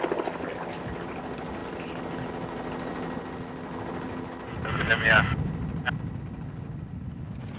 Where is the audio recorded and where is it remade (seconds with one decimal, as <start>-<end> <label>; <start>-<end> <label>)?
0.0-7.6 recorded